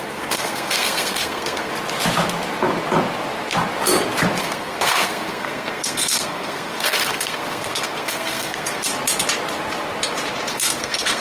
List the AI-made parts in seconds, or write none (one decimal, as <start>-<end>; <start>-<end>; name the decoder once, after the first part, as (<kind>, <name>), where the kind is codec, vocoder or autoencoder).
0.0-1.7 (codec, SNAC); 4.4-8.9; 10.5-11.2